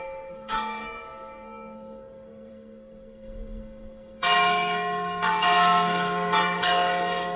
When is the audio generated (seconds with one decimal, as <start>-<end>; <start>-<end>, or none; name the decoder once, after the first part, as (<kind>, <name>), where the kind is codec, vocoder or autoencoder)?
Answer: 0.0-7.4 (codec, SNAC)